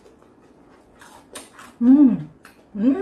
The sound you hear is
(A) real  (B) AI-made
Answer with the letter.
B